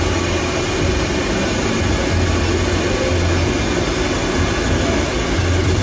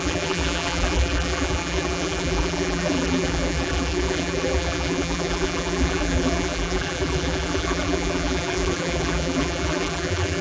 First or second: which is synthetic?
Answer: second